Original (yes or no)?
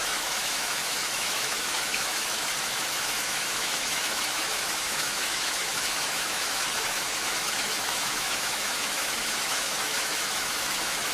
no